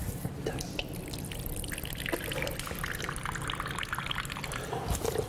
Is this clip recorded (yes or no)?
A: yes